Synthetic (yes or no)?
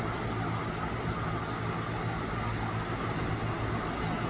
no